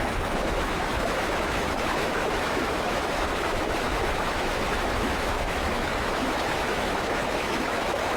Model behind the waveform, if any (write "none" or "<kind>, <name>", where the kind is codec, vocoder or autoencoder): autoencoder, DAC-VAE